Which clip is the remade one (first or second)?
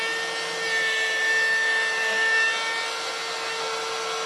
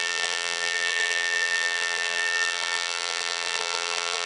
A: second